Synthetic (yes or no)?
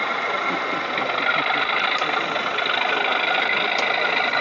no